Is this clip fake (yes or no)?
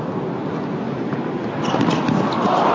no